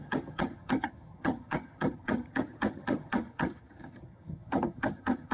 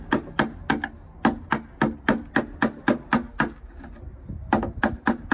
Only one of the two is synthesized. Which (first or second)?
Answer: first